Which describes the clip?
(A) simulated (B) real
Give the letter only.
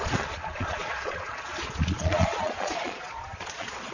A